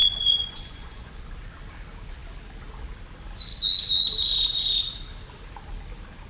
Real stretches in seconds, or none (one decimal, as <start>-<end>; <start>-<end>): 1.2-6.3